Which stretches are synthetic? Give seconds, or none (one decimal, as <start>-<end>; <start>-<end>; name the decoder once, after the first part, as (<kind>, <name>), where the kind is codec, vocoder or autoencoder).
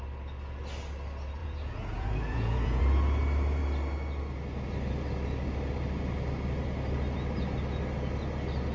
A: 1.4-2.8 (vocoder, Vocos)